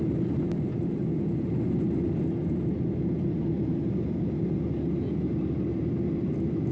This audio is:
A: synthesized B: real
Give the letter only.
B